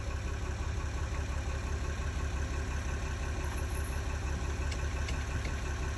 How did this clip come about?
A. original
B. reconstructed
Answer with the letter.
A